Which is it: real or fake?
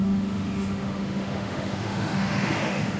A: fake